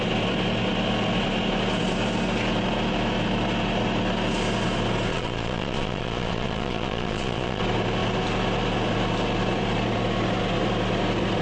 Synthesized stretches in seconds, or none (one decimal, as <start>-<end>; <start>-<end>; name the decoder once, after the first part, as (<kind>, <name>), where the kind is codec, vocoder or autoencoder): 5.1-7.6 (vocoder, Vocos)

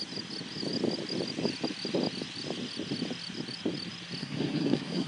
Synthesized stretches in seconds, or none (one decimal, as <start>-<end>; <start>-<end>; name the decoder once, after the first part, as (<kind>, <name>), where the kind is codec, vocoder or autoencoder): 4.2-5.1 (codec, SNAC)

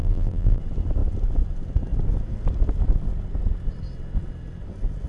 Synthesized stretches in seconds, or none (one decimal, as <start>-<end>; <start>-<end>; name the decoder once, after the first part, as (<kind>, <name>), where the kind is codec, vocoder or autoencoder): 0.0-0.6 (vocoder, BigVGAN v2)